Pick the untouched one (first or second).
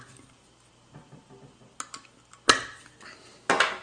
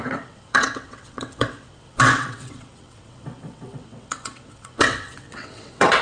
first